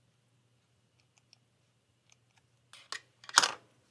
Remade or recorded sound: recorded